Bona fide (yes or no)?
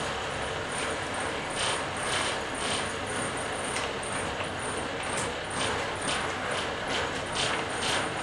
yes